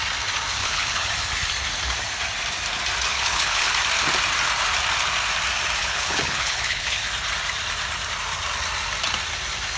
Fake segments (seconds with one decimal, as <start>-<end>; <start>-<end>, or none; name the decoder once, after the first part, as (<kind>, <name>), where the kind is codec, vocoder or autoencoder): 0.6-1.1 (codec, HILCodec); 3.1-3.7; 5.8-7.1